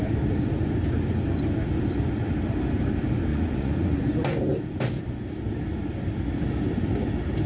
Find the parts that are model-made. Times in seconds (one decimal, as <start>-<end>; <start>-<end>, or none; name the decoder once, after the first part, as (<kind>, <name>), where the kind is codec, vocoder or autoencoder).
3.3-4.0 (vocoder, Vocos)